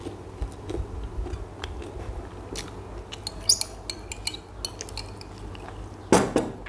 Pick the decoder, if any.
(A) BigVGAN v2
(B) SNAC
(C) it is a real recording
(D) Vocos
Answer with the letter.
C